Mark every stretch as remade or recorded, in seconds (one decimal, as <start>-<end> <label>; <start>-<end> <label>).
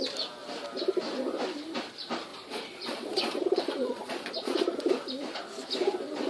0.0-2.3 recorded; 2.3-4.9 remade; 4.9-6.3 recorded